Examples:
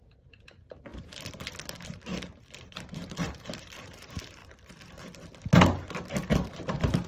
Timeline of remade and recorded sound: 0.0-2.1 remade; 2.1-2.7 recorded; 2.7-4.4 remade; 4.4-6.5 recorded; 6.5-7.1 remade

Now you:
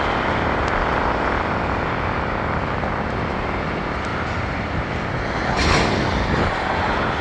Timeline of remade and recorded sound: 0.0-7.2 recorded

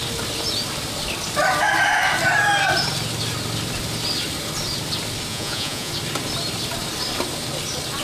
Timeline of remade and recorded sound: 0.0-5.3 recorded; 5.3-5.9 remade; 5.9-8.0 recorded

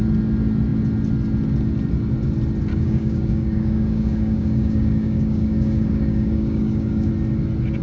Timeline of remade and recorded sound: 0.0-2.7 recorded; 2.7-7.1 remade; 7.1-7.8 recorded